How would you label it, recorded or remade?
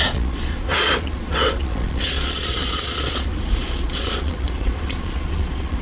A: remade